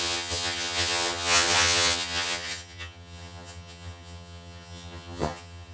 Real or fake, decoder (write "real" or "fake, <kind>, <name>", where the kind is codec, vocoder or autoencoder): fake, vocoder, HiFi-GAN